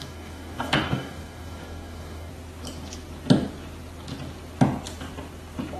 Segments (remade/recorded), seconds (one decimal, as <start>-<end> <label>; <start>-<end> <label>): 0.0-2.3 remade; 2.3-5.8 recorded